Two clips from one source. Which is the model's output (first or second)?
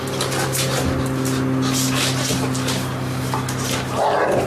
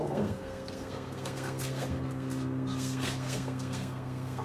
second